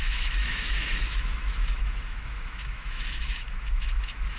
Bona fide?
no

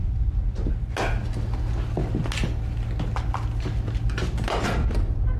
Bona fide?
yes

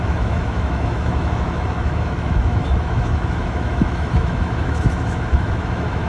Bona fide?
no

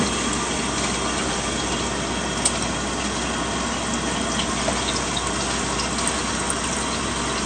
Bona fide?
yes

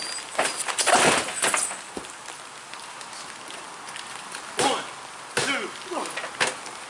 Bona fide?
yes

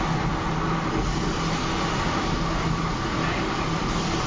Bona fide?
yes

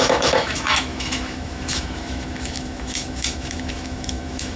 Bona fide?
no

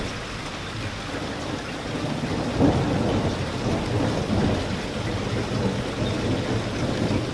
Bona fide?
yes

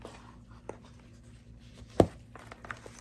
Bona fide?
yes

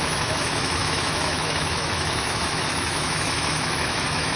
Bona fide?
no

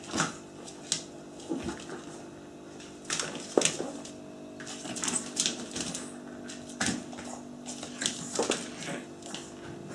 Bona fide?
yes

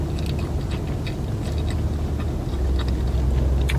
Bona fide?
yes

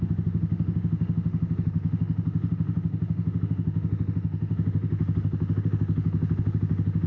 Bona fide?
no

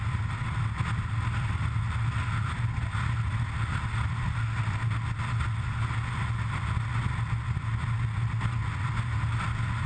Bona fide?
yes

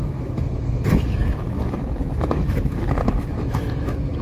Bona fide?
no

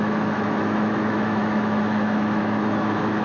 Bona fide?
no